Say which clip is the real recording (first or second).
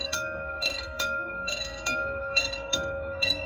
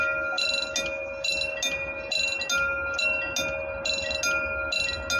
second